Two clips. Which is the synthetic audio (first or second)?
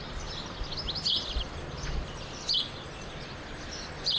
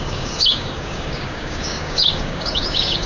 second